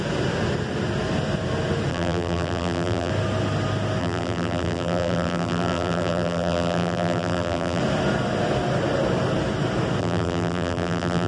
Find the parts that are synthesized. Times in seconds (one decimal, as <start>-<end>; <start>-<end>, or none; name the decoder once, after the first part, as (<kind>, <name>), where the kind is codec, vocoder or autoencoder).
1.9-3.1 (vocoder, BigVGAN v2); 4.0-7.8; 10.0-11.3